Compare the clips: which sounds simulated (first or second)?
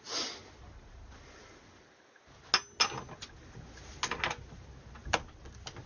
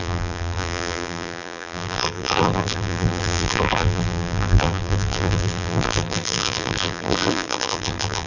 second